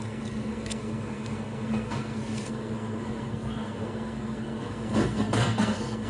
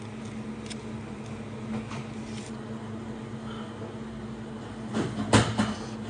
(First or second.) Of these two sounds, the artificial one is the first